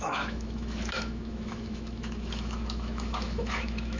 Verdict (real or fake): fake